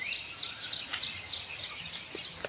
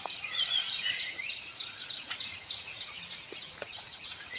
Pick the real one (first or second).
first